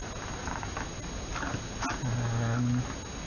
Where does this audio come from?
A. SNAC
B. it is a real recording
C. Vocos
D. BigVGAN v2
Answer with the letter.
B